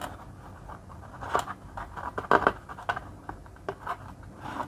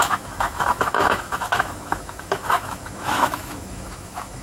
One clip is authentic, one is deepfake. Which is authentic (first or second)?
first